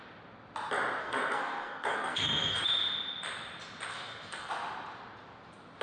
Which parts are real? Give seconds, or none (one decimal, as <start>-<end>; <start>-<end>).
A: 0.0-1.0; 2.6-3.9; 4.5-5.8